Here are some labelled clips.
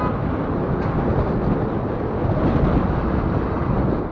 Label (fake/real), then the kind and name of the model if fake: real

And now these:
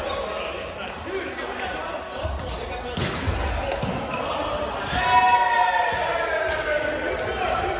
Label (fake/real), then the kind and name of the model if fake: real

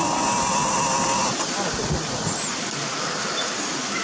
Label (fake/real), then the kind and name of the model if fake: real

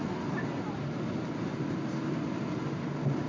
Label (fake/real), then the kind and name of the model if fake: real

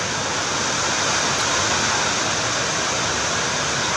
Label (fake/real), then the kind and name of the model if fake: real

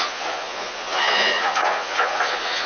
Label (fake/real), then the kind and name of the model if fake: fake, vocoder, Vocos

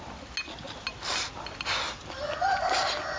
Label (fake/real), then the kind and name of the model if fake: real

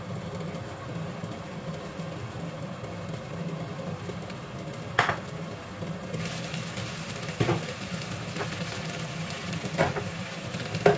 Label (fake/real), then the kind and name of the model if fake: real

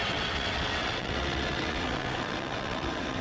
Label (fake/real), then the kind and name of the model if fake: fake, vocoder, WaveNeXt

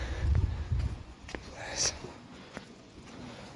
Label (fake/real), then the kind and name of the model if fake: fake, vocoder, Vocos